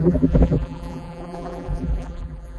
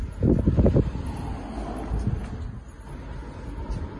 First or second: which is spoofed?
first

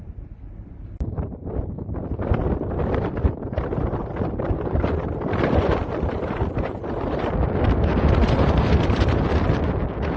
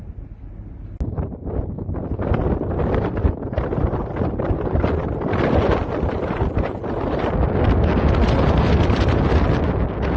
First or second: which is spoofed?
first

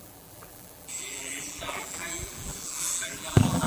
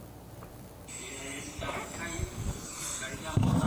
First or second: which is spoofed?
first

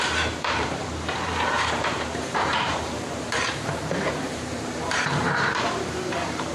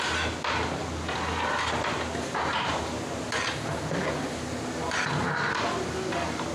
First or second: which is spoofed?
first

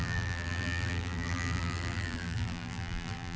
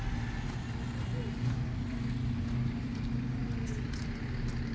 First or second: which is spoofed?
first